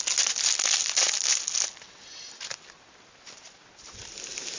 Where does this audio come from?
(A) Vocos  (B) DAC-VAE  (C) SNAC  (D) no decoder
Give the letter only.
D